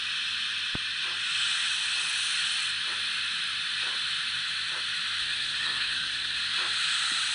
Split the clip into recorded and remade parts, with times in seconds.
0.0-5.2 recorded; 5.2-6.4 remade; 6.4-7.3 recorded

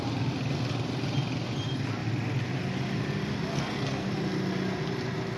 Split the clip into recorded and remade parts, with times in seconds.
0.0-3.5 recorded; 3.5-4.1 remade; 4.1-5.4 recorded

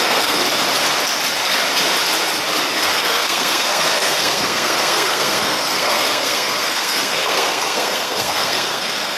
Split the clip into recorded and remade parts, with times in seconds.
0.0-0.4 remade; 0.4-2.9 recorded; 2.9-9.2 remade